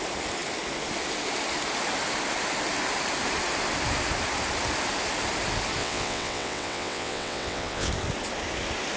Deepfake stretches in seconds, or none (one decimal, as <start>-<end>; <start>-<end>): 5.8-7.9